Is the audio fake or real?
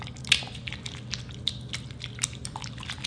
real